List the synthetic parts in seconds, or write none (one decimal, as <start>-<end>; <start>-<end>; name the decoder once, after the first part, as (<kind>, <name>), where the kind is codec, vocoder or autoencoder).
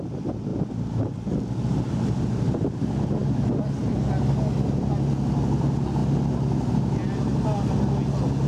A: none